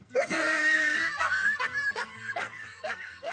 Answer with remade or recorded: remade